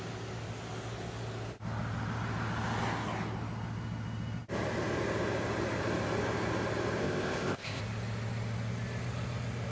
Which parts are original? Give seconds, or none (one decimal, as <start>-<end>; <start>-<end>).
0.0-7.0; 7.8-9.7